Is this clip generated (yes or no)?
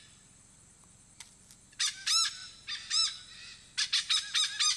no